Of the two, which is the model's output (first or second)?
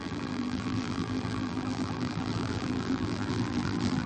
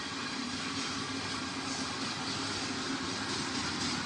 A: first